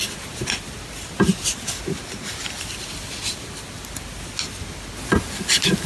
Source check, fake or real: real